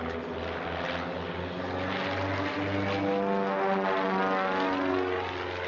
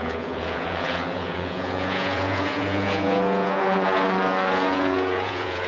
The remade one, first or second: second